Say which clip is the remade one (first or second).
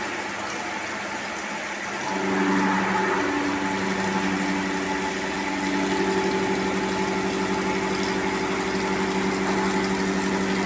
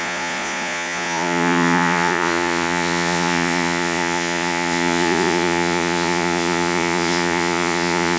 second